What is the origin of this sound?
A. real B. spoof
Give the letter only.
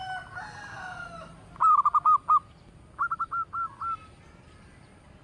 A